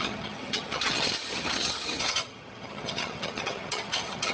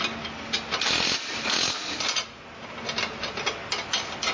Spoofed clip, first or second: first